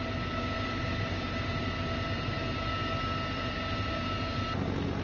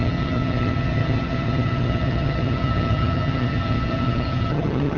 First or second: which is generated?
second